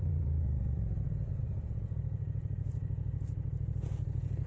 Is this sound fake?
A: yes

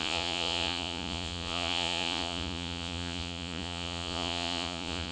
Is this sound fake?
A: yes